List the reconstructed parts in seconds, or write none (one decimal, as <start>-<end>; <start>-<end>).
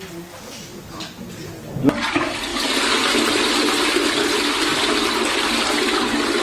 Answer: none